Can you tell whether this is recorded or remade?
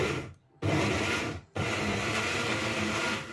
recorded